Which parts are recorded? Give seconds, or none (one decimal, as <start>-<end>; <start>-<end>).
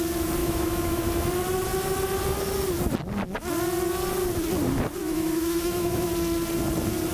0.0-0.4; 1.1-5.0; 6.1-7.1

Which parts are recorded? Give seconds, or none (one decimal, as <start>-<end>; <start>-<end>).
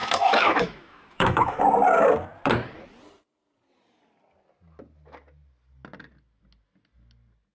1.6-7.5